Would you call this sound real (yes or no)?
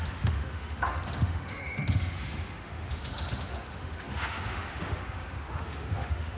no